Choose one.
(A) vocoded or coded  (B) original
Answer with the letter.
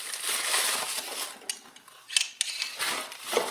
B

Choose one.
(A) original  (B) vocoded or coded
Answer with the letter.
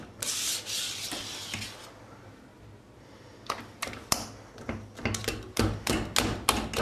A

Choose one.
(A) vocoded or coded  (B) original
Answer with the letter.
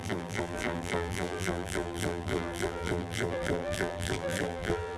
A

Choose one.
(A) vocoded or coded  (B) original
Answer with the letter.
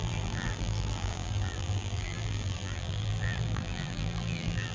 A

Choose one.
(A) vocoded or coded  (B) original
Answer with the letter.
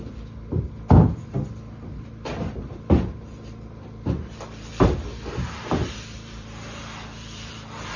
A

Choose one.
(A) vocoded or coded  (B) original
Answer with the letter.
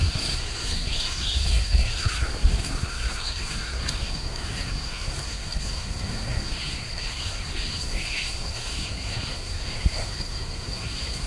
A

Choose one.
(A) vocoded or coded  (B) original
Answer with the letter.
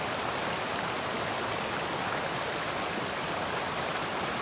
B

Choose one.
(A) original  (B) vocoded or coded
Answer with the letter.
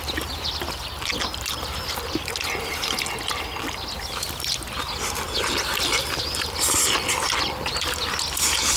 A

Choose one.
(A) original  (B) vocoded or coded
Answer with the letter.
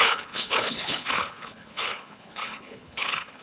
B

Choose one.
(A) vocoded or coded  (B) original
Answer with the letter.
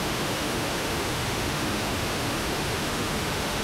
A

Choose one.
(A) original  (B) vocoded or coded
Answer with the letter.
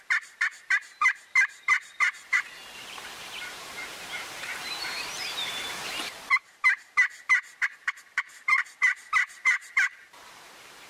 B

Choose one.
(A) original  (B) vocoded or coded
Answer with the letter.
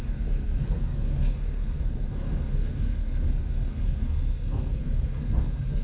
B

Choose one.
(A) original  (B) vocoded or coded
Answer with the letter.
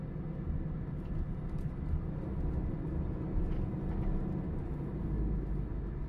A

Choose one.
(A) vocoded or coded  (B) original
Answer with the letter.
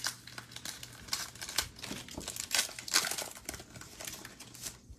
B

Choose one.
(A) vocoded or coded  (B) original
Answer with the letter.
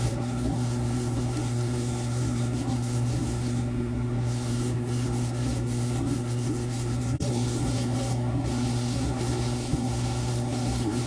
A